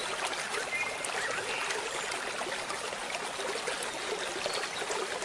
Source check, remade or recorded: recorded